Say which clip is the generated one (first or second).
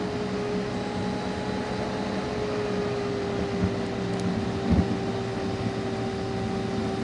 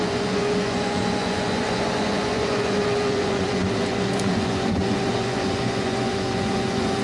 second